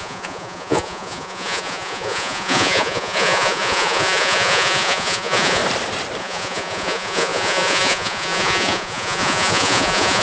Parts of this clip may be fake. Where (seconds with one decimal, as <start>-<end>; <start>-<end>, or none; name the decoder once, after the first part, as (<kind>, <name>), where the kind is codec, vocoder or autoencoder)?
0.0-5.6 (vocoder, Vocos); 6.2-10.2